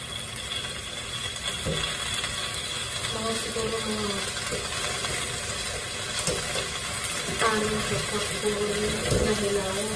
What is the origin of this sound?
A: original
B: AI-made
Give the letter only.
A